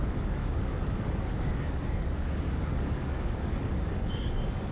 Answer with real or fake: fake